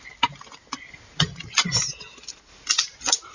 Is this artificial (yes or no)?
no